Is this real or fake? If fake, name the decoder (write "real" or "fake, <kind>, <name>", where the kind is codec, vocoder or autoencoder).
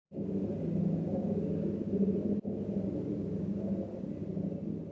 real